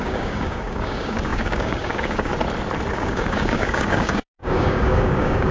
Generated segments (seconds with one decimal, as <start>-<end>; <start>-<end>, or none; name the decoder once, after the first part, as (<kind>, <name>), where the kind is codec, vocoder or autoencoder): 0.0-2.3 (codec, DAC); 2.9-5.5